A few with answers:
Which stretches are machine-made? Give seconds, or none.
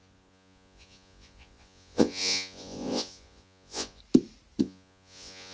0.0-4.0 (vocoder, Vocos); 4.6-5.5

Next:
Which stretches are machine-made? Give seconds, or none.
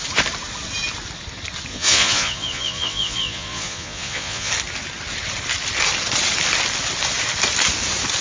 1.7-4.5 (vocoder, Vocos)